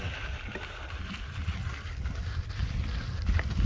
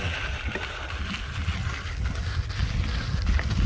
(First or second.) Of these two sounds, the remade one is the first